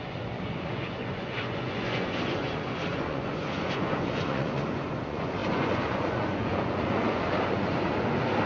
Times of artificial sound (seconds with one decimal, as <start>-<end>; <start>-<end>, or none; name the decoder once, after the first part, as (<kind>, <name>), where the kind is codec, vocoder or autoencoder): 0.0-8.5 (vocoder, Vocos)